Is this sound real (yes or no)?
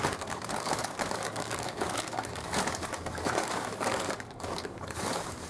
no